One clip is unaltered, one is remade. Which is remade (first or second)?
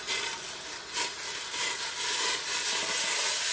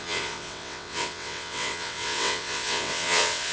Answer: second